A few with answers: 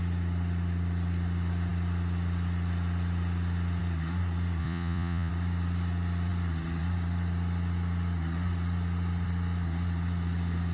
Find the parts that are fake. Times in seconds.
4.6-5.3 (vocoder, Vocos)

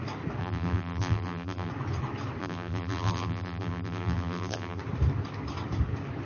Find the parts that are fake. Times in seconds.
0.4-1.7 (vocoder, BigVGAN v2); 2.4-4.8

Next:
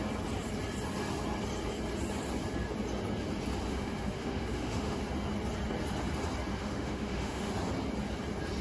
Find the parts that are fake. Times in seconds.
3.7-5.0 (autoencoder, DAC-VAE); 6.5-7.5